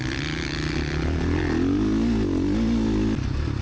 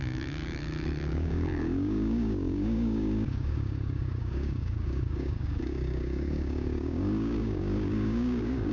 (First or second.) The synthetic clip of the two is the second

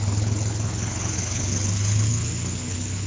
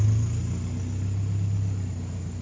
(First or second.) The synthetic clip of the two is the first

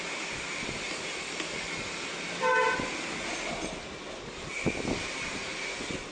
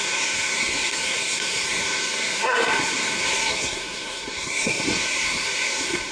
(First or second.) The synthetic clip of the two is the second